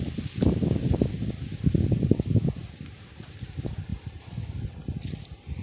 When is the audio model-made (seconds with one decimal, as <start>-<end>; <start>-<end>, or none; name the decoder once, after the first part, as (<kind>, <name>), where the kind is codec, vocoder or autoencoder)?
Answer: none